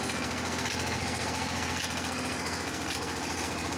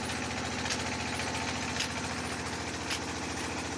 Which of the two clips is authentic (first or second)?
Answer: second